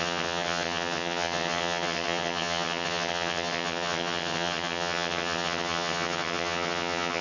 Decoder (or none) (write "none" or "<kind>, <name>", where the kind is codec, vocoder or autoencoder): vocoder, HiFi-GAN